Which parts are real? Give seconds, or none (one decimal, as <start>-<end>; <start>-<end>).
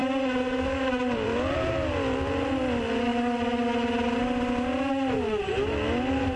1.0-6.4